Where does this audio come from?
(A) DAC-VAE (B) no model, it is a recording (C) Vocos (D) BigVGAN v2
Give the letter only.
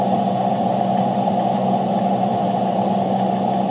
B